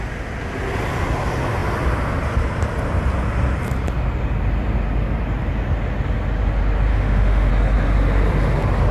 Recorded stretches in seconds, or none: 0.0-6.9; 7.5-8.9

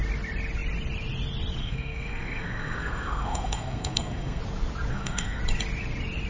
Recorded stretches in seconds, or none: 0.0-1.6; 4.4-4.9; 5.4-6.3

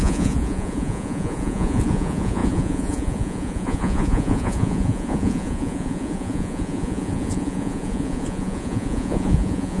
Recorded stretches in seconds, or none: none

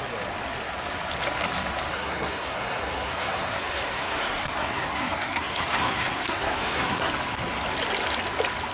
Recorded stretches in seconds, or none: 0.0-1.9; 7.1-8.7

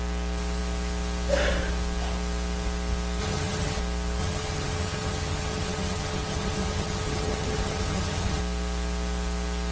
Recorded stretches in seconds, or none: 0.0-3.2; 3.8-4.2; 8.4-9.7